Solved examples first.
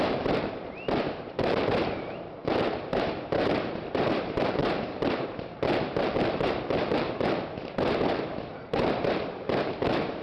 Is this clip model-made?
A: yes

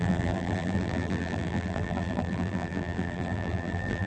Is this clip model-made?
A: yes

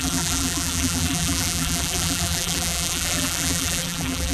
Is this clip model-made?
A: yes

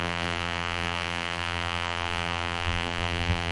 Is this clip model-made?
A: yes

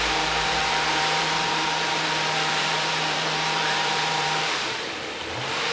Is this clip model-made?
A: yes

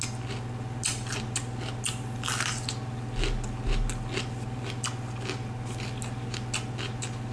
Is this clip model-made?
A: no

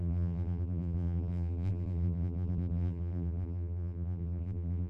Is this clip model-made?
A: yes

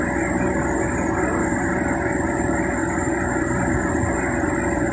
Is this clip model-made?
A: no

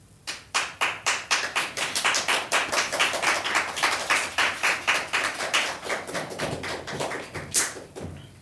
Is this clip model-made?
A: yes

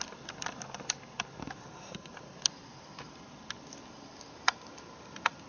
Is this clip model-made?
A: no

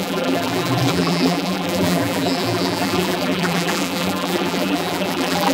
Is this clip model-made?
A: yes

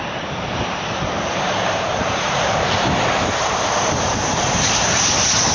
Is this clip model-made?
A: yes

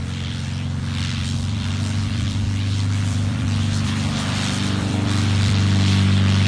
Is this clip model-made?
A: yes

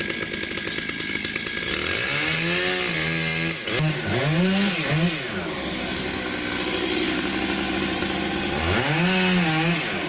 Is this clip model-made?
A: no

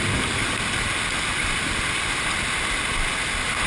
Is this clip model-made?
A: no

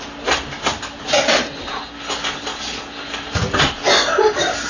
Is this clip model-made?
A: no